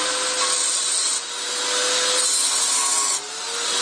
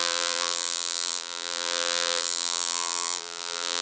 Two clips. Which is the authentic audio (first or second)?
first